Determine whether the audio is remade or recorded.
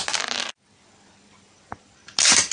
recorded